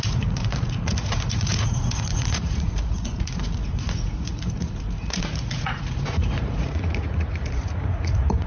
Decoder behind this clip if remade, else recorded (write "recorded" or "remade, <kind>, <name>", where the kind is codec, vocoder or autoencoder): remade, vocoder, Vocos